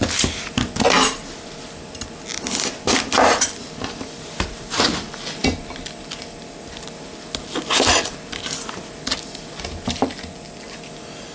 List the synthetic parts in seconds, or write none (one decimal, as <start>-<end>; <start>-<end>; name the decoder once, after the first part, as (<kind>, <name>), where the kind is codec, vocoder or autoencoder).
none